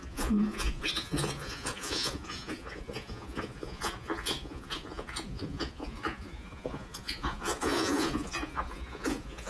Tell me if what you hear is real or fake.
fake